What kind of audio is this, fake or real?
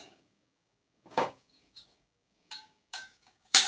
fake